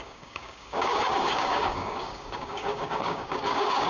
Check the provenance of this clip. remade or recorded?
remade